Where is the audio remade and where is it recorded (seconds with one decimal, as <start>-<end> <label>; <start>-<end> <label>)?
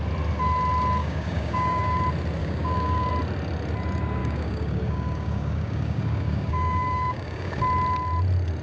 0.0-1.0 recorded; 1.0-2.0 remade; 2.0-2.4 recorded; 2.4-3.1 remade; 3.1-4.2 recorded; 4.2-7.6 remade; 7.6-8.6 recorded